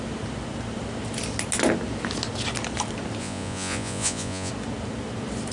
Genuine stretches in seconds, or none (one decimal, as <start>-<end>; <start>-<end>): 0.0-3.2; 4.5-5.5

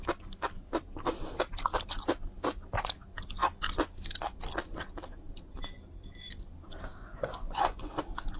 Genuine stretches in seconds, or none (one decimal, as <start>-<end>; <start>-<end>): 0.0-7.0; 8.0-8.4

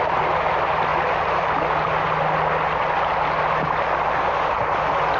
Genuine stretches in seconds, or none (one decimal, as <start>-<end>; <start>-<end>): 0.0-5.2

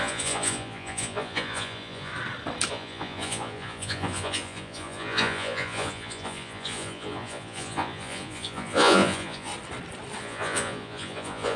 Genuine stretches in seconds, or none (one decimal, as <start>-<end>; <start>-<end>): 2.1-2.7; 9.5-10.2

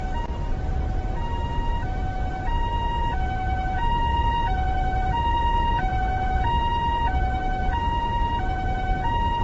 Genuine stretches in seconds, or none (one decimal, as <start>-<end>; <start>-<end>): 0.0-4.1; 6.5-9.4